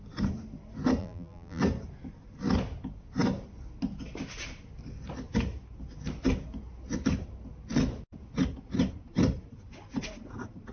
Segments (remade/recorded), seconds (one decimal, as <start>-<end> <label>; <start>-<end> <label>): 0.0-1.0 recorded; 1.0-1.6 remade; 1.6-10.7 recorded